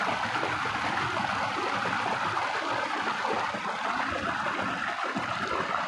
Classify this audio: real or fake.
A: real